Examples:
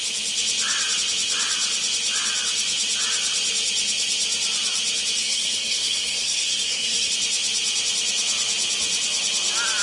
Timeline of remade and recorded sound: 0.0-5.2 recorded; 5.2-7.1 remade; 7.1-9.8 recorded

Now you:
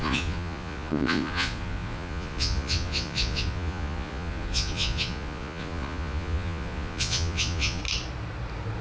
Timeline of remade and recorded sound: 0.0-7.8 remade; 7.8-8.8 recorded

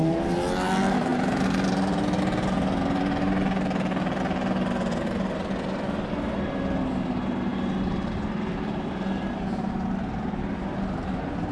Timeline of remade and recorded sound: 0.0-11.5 recorded